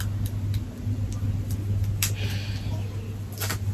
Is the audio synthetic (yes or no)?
no